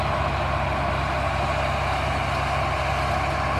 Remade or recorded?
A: recorded